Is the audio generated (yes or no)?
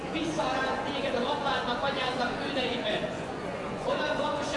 yes